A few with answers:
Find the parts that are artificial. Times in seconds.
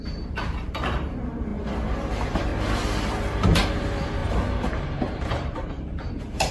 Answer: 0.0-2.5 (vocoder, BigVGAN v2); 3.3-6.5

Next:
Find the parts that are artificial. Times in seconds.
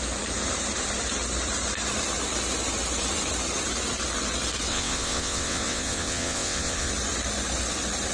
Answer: 4.7-6.9 (vocoder, WaveNeXt)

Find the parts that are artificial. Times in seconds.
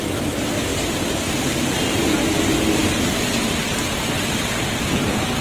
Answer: 0.7-1.4 (vocoder, BigVGAN v2)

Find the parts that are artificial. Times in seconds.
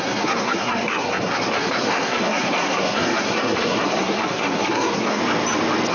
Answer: 0.0-5.2 (codec, SNAC)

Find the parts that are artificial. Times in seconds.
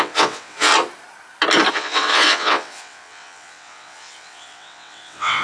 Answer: 0.0-0.7 (vocoder, WaveNeXt); 1.7-5.4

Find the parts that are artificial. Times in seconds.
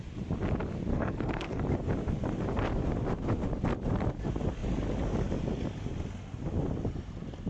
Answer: 0.9-1.6 (codec, SNAC)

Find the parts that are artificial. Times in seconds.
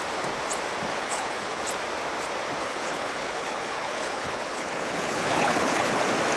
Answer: 0.9-1.6 (codec, HILCodec); 2.6-6.0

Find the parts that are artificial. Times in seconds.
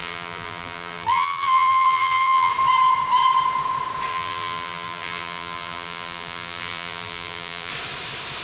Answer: 0.0-2.5 (vocoder, BigVGAN v2); 4.1-7.7